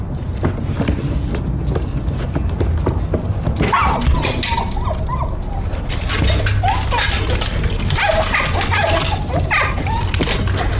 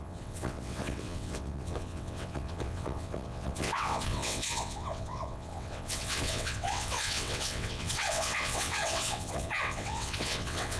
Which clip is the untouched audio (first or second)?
first